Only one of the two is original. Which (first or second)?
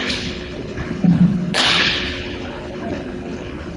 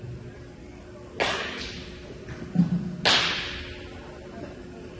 second